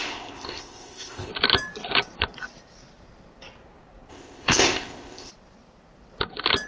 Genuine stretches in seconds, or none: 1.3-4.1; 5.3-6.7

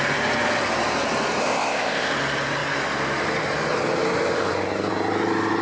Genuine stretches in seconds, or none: 0.0-1.4; 2.1-5.6

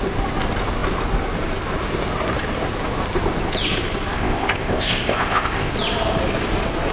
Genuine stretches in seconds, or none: 0.0-4.1; 5.7-6.9

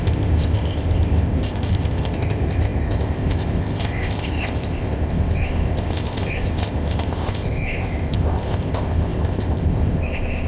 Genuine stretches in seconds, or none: none

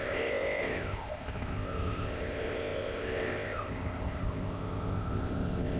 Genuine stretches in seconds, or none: none